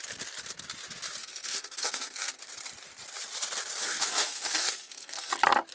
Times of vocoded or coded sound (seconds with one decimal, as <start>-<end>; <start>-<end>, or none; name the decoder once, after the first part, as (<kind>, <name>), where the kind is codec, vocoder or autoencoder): 1.2-2.4 (codec, SNAC); 3.8-5.3